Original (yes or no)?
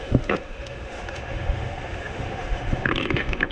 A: no